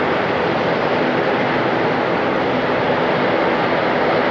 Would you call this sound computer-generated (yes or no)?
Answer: no